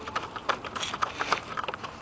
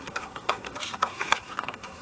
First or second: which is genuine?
first